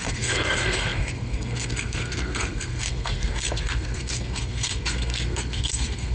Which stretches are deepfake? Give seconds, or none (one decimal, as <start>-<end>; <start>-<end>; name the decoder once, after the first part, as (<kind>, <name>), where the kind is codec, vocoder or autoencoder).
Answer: 0.0-6.1 (codec, SNAC)